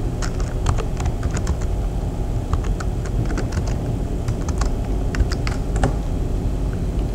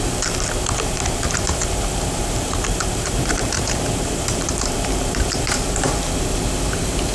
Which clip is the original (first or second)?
first